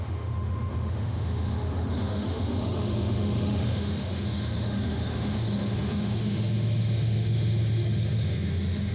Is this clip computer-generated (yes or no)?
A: yes